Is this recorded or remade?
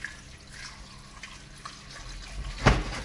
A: recorded